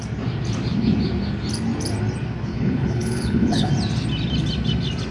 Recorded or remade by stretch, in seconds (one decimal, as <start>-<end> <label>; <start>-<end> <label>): 0.0-2.5 recorded; 2.5-3.7 remade; 3.7-5.1 recorded